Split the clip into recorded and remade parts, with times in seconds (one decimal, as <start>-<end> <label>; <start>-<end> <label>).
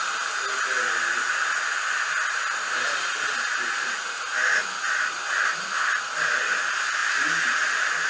0.0-8.1 recorded